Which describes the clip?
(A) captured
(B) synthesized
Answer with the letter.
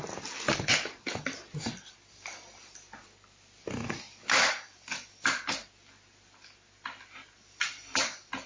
A